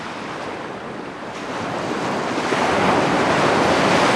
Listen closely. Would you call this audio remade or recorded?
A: recorded